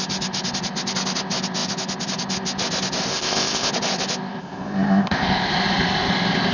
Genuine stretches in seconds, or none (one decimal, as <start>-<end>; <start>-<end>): 0.0-3.1; 3.7-4.4; 5.5-6.5